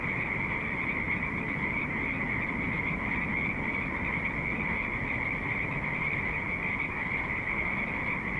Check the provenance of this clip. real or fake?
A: real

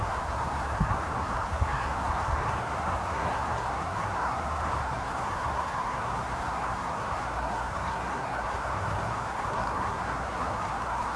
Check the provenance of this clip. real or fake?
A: fake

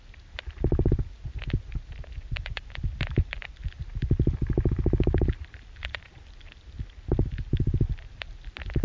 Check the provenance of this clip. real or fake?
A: real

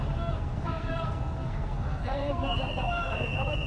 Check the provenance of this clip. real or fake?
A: fake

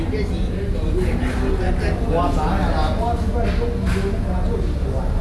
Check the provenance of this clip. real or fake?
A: real